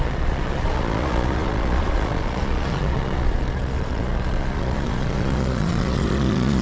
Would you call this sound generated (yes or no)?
yes